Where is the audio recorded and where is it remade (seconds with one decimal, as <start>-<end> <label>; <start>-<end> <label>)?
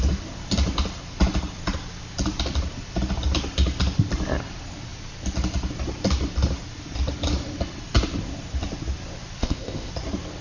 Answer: 0.0-9.4 recorded; 9.4-9.9 remade; 9.9-10.4 recorded